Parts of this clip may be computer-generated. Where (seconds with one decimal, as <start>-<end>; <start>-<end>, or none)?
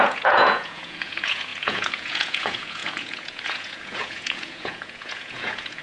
0.0-5.8